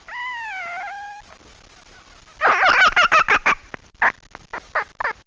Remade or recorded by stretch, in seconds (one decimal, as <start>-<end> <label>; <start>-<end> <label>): 0.0-5.3 recorded